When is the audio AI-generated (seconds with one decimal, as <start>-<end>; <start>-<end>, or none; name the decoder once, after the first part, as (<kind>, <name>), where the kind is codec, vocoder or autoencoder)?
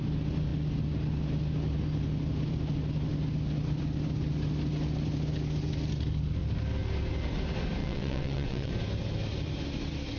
7.8-8.7 (vocoder, WaveNeXt)